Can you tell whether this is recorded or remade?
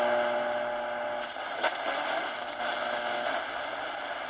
recorded